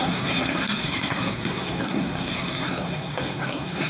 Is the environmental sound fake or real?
fake